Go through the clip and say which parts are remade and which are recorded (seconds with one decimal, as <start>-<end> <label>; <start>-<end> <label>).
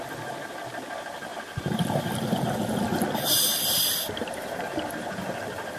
0.0-5.8 recorded